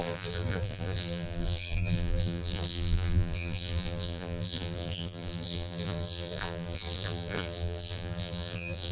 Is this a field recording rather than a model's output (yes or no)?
no